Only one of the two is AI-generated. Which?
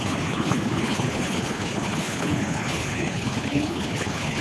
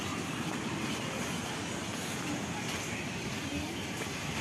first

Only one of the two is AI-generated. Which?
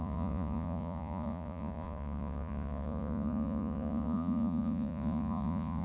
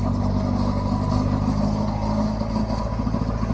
first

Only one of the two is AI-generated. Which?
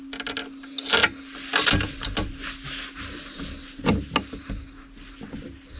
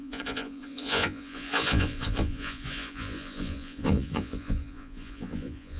second